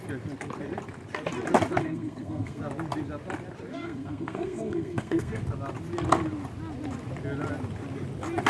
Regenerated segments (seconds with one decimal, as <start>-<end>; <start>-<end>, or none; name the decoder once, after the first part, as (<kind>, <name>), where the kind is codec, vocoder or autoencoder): 1.8-2.6 (codec, SNAC); 3.7-5.4